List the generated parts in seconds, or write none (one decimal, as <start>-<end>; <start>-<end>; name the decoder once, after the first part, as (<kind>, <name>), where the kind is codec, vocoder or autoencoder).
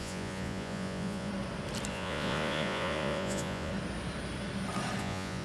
0.0-1.3 (vocoder, Vocos); 1.9-3.7; 5.0-5.4